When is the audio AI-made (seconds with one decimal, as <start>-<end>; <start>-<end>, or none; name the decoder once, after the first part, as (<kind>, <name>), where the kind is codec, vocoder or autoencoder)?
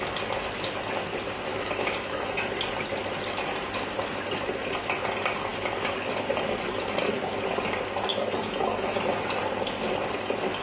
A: 1.5-2.6 (autoencoder, DAC-VAE); 8.1-9.0